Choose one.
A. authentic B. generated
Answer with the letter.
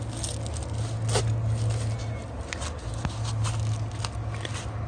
A